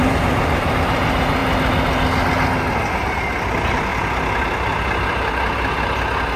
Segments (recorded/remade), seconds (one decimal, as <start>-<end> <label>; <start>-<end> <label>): 0.0-1.4 remade; 1.4-3.5 recorded; 3.5-3.9 remade; 3.9-6.4 recorded